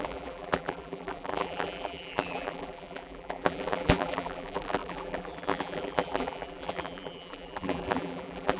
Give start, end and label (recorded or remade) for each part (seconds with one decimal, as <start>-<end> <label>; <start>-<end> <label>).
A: 0.0-8.6 remade